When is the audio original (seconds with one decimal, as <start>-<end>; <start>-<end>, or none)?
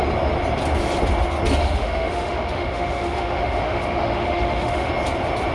0.0-1.6; 4.9-5.5